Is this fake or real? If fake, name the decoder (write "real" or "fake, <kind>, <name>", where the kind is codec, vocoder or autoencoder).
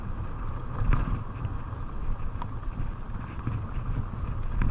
real